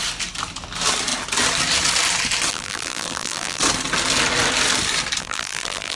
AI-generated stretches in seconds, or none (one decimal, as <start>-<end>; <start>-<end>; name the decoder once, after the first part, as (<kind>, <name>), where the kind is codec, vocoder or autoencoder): 2.5-3.6 (vocoder, BigVGAN v2); 5.2-6.0